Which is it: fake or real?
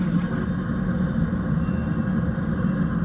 real